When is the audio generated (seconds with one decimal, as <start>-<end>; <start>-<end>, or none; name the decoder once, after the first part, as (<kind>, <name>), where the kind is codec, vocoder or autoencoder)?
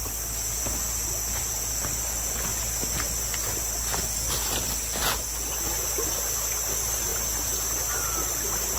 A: none